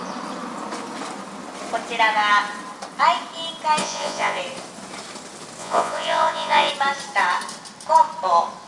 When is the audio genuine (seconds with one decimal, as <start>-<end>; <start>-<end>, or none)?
0.0-3.8; 4.4-5.6; 6.7-8.7